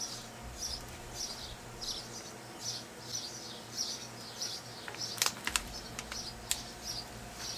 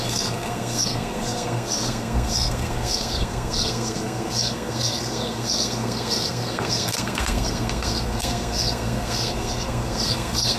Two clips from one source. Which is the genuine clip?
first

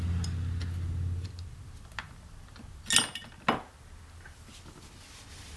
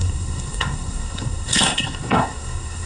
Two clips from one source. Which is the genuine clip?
first